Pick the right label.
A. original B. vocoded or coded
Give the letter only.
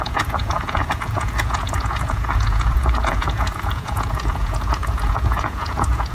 B